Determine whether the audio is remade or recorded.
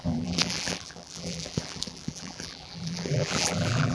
remade